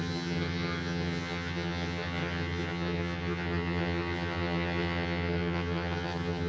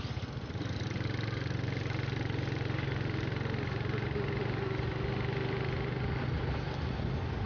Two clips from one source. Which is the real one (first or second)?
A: second